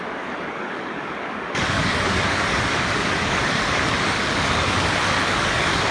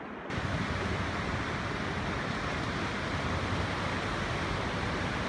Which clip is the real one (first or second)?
second